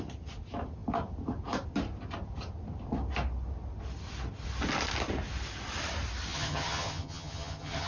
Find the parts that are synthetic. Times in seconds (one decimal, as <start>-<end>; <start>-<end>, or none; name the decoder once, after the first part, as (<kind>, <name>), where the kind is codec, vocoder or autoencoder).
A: 6.3-7.9 (vocoder, HiFi-GAN)